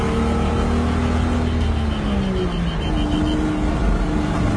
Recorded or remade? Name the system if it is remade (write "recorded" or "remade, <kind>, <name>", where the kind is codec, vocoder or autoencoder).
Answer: recorded